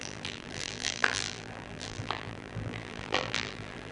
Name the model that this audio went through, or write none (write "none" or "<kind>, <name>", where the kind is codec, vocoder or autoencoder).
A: vocoder, BigVGAN v2